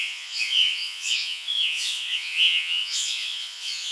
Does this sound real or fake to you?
fake